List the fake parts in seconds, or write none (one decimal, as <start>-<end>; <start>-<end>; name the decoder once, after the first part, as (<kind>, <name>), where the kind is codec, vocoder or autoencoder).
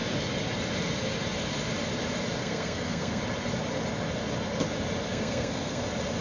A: 2.4-3.2 (codec, SNAC); 5.1-5.8